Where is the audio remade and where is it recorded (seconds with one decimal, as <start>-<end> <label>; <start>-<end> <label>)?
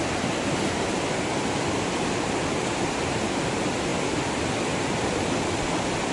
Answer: 0.0-6.1 recorded